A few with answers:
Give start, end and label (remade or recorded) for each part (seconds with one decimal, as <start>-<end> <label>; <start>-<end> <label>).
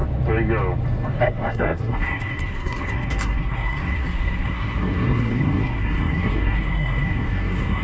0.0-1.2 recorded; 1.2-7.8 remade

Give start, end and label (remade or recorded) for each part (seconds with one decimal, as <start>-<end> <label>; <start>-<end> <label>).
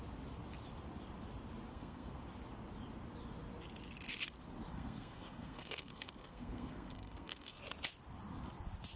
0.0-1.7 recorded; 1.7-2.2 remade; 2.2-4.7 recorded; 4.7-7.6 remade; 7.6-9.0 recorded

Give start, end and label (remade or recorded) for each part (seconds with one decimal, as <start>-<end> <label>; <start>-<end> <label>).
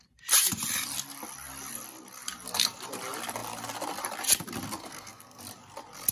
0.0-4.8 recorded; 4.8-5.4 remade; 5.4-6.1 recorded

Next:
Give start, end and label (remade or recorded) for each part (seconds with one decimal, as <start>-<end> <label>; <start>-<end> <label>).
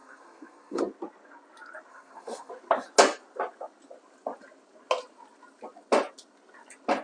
0.0-0.8 remade; 0.8-1.9 recorded; 1.9-2.5 remade; 2.5-7.0 recorded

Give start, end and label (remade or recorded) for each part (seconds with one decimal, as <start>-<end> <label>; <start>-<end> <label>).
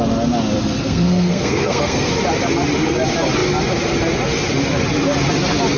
0.0-0.8 recorded; 0.8-2.1 remade; 2.1-5.8 recorded